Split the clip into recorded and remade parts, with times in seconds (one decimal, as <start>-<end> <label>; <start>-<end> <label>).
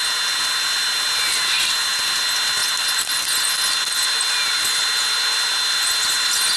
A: 0.0-6.6 recorded